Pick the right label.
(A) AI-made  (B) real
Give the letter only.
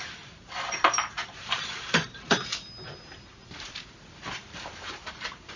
A